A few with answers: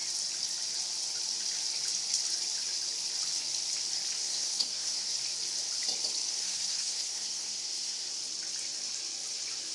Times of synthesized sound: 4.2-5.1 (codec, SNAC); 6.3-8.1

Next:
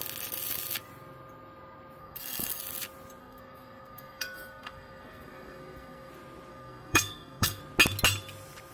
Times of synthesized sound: 2.0-2.6 (codec, SNAC); 3.2-6.1; 6.5-7.6

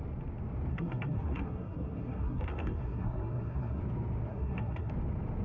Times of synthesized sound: 0.7-3.8 (codec, SNAC); 4.3-4.9

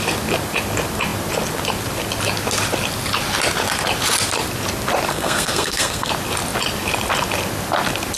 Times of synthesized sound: 5.1-6.1 (codec, SNAC)